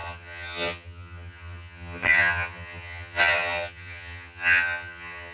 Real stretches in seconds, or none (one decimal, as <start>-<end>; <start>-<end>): none